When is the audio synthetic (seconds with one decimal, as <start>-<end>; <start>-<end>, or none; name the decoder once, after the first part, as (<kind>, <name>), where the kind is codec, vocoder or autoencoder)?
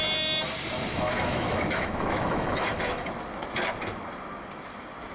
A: 0.9-3.1 (autoencoder, DAC-VAE)